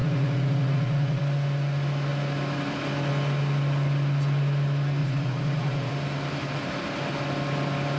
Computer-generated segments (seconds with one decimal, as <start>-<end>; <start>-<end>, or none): 0.0-1.2; 5.0-5.9